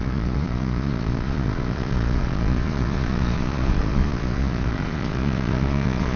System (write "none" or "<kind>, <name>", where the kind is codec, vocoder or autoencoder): vocoder, Vocos